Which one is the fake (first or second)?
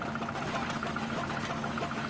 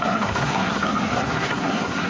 second